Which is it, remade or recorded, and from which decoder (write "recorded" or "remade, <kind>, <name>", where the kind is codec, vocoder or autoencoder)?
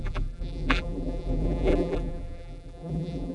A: remade, vocoder, BigVGAN v2